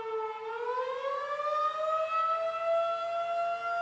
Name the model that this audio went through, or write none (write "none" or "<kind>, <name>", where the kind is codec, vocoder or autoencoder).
none